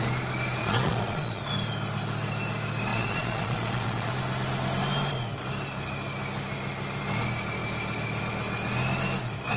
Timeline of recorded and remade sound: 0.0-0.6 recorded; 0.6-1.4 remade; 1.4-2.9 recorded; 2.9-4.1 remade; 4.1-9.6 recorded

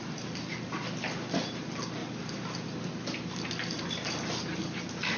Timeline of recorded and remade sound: 0.0-5.2 remade

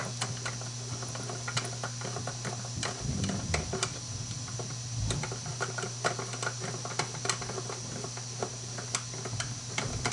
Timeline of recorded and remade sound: 0.0-10.1 recorded

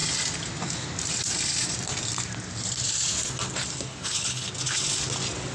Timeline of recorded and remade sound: 0.0-3.9 recorded; 3.9-4.5 remade; 4.5-5.5 recorded

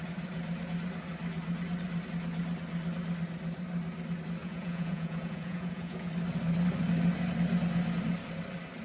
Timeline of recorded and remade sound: 0.0-4.4 recorded; 4.4-6.1 remade; 6.1-8.8 recorded

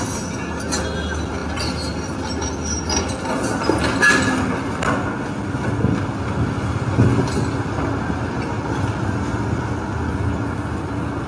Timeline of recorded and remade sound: 0.0-11.3 recorded

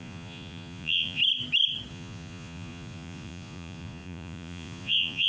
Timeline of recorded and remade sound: 0.0-1.2 remade; 1.2-1.9 recorded; 1.9-5.3 remade